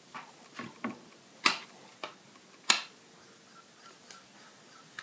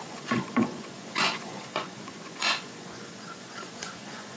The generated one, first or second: second